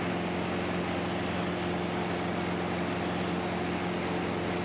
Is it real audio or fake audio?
real